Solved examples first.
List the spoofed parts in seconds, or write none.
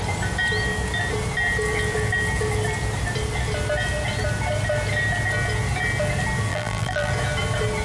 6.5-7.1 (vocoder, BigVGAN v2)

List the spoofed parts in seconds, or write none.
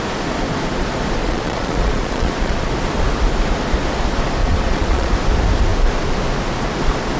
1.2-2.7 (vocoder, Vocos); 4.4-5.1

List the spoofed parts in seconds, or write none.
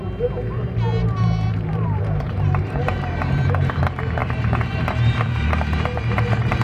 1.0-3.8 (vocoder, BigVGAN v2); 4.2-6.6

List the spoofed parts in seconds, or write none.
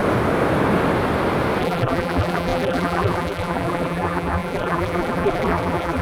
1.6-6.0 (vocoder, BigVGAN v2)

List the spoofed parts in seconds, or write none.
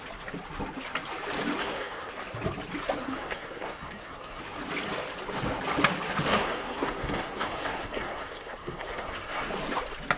1.6-2.1 (codec, SNAC); 3.0-4.4; 6.3-9.5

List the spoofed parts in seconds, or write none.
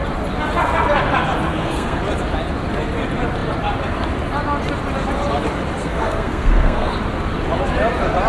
1.5-2.0 (codec, SNAC); 5.8-6.9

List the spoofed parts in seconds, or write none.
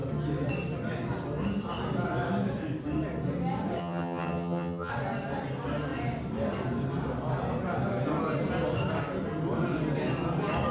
3.8-4.9 (vocoder, HiFi-GAN)